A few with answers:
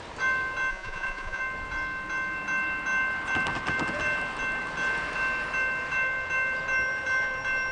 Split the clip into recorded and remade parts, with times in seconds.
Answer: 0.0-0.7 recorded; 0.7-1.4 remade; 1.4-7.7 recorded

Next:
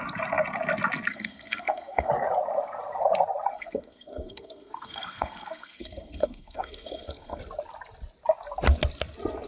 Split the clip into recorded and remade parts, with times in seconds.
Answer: 0.0-1.1 recorded; 1.1-2.1 remade; 2.1-3.5 recorded; 3.5-7.4 remade; 7.4-9.5 recorded

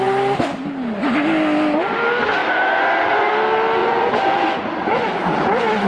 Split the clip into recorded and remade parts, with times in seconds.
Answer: 0.0-2.4 recorded; 2.4-3.3 remade; 3.3-3.8 recorded; 3.8-5.4 remade; 5.4-5.9 recorded

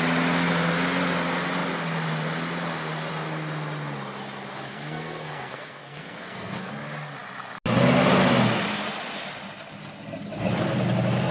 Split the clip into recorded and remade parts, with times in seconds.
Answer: 0.0-4.5 recorded; 4.5-6.7 remade; 6.7-11.3 recorded

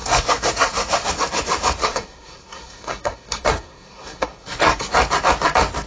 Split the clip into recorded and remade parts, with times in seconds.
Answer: 0.0-1.1 remade; 1.1-1.8 recorded; 1.8-4.9 remade; 4.9-5.9 recorded

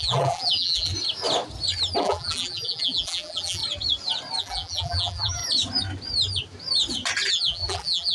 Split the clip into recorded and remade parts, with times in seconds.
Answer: 0.0-0.9 remade; 0.9-2.0 recorded; 2.0-3.6 remade; 3.6-4.4 recorded; 4.4-5.4 remade; 5.4-7.3 recorded; 7.3-8.1 remade

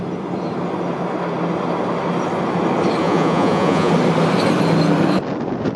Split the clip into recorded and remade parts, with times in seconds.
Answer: 0.0-3.0 recorded; 3.0-3.9 remade; 3.9-5.8 recorded